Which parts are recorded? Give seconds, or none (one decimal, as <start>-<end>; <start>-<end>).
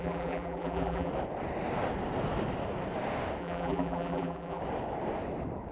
1.1-3.4; 4.6-5.7